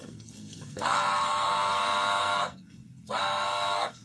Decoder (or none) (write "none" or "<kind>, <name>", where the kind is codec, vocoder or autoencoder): codec, SNAC